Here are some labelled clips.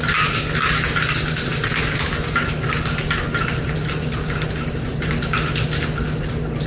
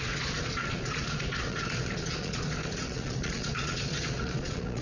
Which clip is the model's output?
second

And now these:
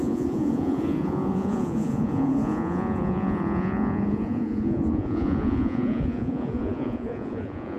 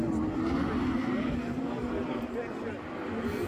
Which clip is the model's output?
first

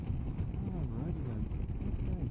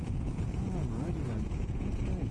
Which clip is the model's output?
second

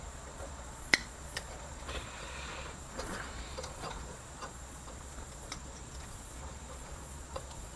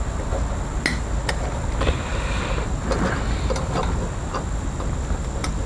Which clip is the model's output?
first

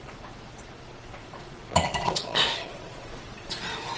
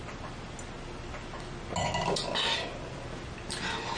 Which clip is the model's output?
first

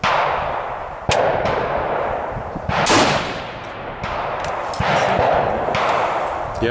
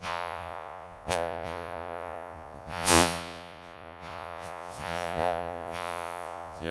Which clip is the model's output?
second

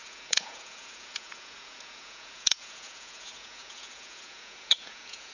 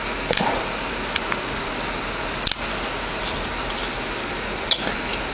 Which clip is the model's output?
first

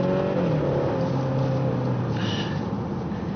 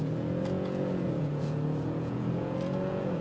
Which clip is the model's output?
second